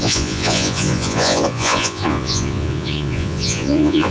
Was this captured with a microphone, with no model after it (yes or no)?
no